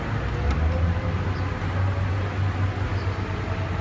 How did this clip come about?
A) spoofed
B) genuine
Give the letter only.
B